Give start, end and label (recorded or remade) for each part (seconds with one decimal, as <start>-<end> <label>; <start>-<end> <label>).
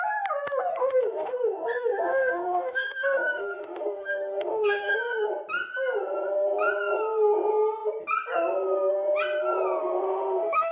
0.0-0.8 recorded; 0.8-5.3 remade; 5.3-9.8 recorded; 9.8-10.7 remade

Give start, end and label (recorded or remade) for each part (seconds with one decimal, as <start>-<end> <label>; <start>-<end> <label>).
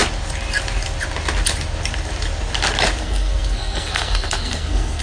0.0-3.0 recorded; 3.0-5.0 remade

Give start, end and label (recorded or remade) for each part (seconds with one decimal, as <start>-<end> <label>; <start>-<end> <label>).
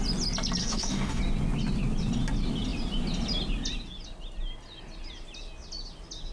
0.0-0.6 recorded; 0.6-1.2 remade; 1.2-6.3 recorded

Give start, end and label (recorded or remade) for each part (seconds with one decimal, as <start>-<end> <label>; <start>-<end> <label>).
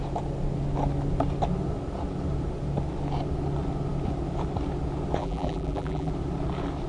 0.0-5.2 recorded; 5.2-6.1 remade; 6.1-6.9 recorded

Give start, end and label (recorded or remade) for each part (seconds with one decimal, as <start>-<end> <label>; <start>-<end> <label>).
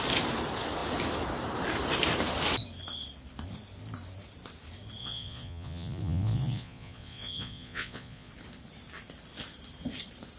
0.0-5.0 recorded; 5.0-8.3 remade; 8.3-10.4 recorded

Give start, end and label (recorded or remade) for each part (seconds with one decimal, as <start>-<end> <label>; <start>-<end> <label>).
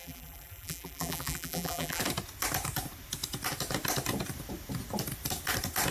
0.0-2.0 remade; 2.0-5.9 recorded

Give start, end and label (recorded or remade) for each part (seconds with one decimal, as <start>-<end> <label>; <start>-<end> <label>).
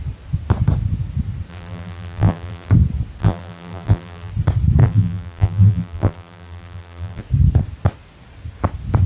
0.0-1.5 recorded; 1.5-2.7 remade; 2.7-3.2 recorded; 3.2-4.3 remade; 4.3-4.8 recorded; 4.8-7.2 remade; 7.2-9.1 recorded